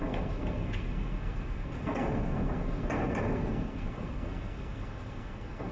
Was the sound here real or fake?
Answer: fake